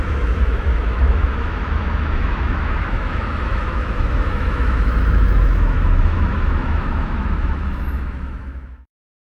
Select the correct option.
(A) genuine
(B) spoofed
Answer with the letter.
B